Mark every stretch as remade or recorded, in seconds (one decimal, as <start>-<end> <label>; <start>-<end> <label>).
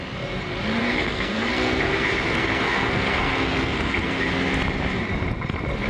0.0-0.8 recorded; 0.8-4.3 remade; 4.3-5.9 recorded